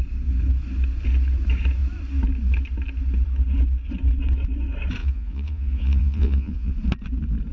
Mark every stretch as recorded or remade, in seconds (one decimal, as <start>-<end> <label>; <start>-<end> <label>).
0.0-5.0 recorded; 5.0-6.7 remade; 6.7-7.5 recorded